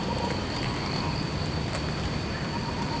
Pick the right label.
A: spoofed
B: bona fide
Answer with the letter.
B